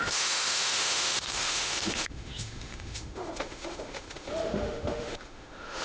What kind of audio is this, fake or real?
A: fake